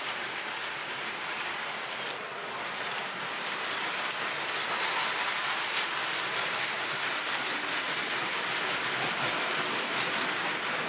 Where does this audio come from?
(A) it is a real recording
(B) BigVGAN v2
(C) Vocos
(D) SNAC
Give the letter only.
A